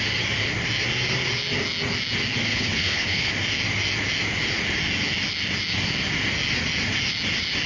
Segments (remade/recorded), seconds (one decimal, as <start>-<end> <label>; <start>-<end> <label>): 0.0-2.5 recorded; 2.5-3.3 remade; 3.3-7.7 recorded